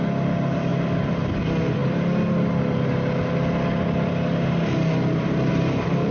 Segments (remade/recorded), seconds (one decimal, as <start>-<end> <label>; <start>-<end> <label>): 0.0-6.1 recorded